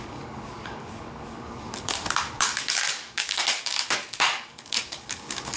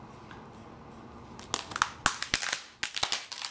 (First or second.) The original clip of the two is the second